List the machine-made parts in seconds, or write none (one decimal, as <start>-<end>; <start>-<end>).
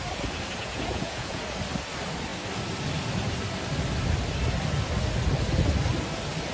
0.6-1.4